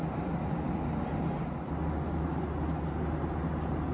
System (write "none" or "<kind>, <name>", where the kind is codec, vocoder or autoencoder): none